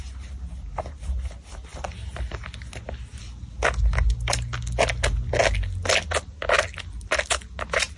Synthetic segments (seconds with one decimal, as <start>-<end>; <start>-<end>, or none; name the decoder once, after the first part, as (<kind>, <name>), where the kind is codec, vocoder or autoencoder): none

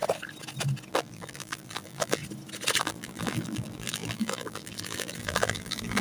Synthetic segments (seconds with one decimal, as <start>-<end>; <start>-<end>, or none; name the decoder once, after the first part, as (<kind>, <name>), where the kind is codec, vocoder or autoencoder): 0.9-2.2 (vocoder, BigVGAN v2); 2.8-6.0

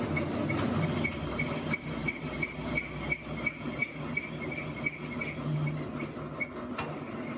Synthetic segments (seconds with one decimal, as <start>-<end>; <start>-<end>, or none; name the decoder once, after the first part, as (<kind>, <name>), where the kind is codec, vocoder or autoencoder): none

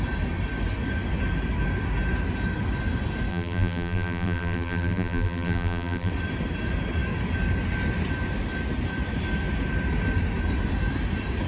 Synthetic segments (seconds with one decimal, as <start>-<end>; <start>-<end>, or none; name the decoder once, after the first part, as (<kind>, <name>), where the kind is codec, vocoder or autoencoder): 3.3-6.1 (vocoder, BigVGAN v2)

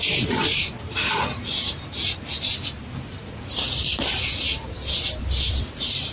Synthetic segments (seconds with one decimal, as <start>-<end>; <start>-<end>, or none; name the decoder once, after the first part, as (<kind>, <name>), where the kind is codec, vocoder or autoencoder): 4.5-5.2 (vocoder, BigVGAN v2)